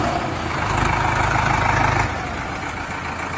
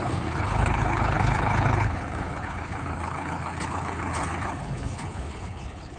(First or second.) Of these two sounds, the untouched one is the first